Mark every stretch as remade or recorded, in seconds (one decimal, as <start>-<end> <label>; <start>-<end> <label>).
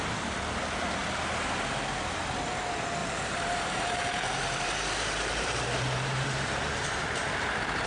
0.0-3.0 recorded; 3.0-7.9 remade